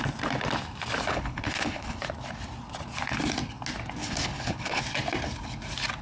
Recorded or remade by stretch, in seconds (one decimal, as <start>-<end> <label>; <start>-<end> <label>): 0.0-1.1 recorded; 1.1-2.0 remade; 2.0-4.0 recorded; 4.0-4.8 remade; 4.8-6.0 recorded